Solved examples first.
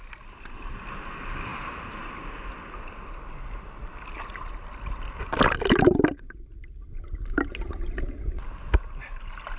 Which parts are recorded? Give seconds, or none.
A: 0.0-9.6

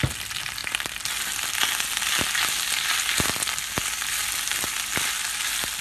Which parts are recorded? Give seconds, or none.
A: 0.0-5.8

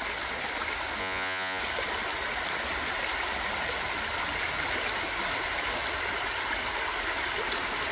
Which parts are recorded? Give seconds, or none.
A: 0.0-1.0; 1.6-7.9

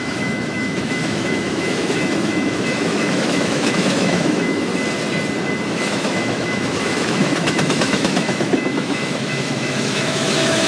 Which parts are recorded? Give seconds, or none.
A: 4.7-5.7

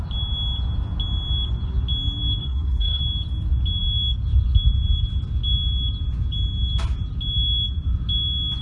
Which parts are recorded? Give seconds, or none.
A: 0.0-2.4; 3.0-8.6

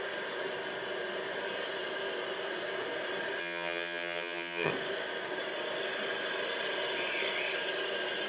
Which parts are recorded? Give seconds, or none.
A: 0.0-3.4; 4.7-8.3

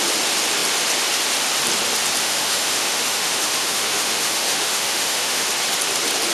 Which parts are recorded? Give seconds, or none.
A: 0.0-2.2; 5.5-6.3

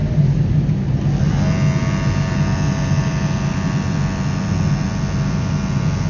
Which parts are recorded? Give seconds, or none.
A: 0.0-6.1